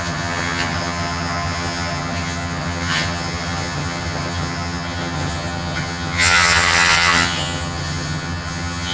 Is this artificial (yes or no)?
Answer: yes